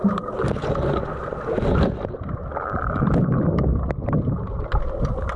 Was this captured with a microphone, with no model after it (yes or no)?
yes